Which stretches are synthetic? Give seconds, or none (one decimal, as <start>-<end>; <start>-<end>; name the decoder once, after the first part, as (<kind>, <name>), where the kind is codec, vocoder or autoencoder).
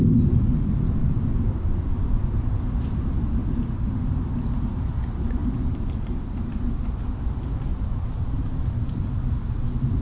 1.0-2.2 (vocoder, BigVGAN v2); 3.4-4.2; 5.4-7.0; 7.7-9.2